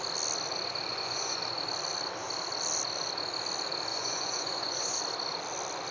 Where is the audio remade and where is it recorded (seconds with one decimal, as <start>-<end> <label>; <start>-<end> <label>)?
0.0-0.9 recorded; 0.9-1.4 remade; 1.4-3.9 recorded; 3.9-5.0 remade; 5.0-5.9 recorded